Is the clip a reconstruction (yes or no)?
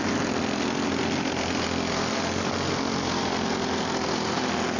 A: no